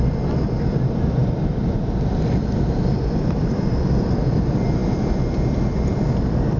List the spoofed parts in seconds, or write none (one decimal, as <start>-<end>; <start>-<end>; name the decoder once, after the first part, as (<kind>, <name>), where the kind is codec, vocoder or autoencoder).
0.0-6.6 (vocoder, BigVGAN v2)